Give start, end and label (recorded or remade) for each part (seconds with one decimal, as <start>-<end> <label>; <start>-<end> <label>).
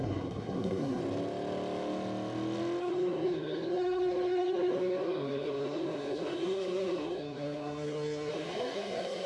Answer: 0.0-1.0 remade; 1.0-2.8 recorded; 2.8-9.3 remade